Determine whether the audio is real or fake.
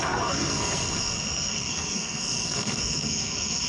fake